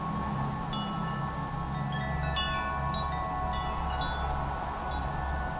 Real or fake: real